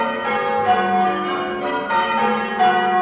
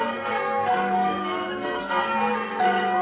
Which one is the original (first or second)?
first